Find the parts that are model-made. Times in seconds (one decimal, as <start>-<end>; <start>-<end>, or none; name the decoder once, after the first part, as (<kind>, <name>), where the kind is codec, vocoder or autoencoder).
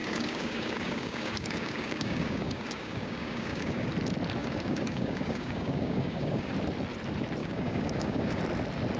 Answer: 0.0-3.9 (codec, DAC); 4.4-6.5; 7.4-8.4